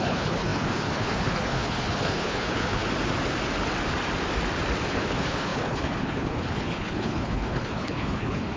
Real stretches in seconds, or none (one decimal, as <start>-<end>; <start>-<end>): 2.8-4.9